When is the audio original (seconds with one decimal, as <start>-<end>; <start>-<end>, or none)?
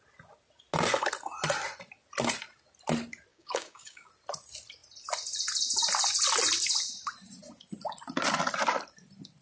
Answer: 0.0-3.3; 4.1-9.4